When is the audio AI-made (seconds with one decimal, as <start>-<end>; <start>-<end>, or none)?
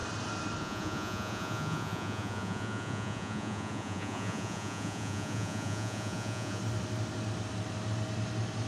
0.6-6.6